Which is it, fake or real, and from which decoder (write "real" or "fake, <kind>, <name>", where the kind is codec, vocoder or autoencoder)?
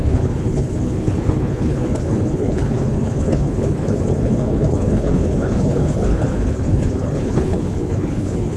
fake, codec, HILCodec